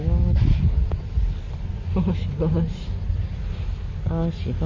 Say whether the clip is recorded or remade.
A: recorded